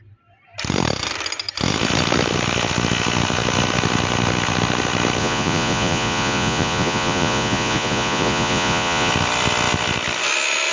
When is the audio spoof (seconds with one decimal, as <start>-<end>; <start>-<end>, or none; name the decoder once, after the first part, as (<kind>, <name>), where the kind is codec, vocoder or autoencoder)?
5.2-9.1 (vocoder, Vocos)